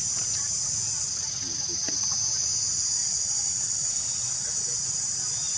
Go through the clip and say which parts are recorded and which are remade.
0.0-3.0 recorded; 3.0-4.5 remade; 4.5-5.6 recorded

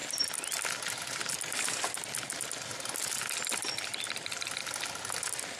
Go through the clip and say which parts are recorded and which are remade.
0.0-5.6 recorded

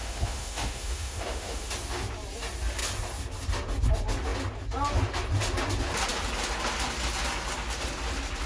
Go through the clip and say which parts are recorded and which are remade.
0.0-1.7 remade; 1.7-8.5 recorded

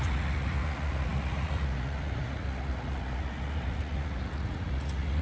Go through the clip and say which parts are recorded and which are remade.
0.0-5.2 remade

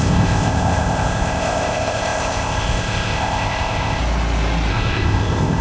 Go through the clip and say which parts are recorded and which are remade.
0.0-4.0 remade; 4.0-4.7 recorded; 4.7-5.6 remade

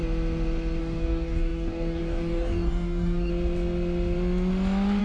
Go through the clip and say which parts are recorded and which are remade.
0.0-0.8 recorded; 0.8-3.3 remade; 3.3-5.0 recorded